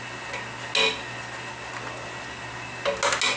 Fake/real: real